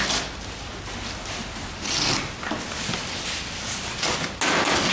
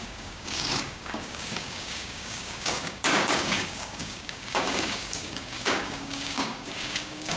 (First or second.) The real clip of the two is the first